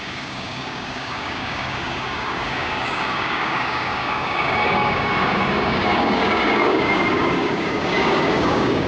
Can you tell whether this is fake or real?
fake